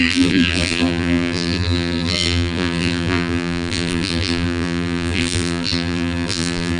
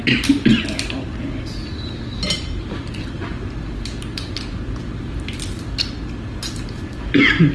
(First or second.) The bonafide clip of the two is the second